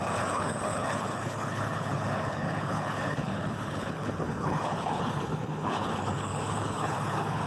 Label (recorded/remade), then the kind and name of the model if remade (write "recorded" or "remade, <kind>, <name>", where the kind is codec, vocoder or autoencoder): remade, codec, HILCodec